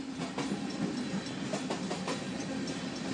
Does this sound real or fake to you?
real